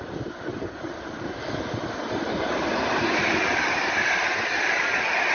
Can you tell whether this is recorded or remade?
recorded